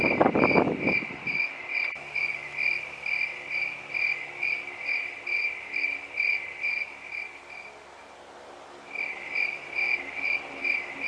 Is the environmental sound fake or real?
real